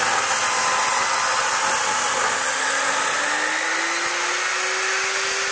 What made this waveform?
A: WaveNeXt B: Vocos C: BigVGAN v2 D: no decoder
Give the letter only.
D